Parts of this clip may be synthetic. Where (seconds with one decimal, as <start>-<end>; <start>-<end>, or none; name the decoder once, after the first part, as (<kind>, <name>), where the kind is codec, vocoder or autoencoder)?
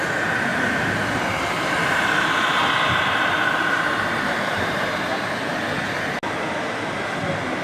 0.5-5.1 (vocoder, BigVGAN v2)